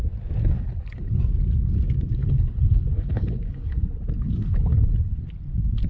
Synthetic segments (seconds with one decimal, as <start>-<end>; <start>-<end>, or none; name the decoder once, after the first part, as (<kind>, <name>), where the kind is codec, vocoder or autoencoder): 0.4-1.2 (codec, HILCodec); 2.2-5.1